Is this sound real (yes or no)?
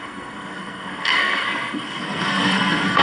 no